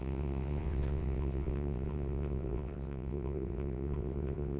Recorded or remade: remade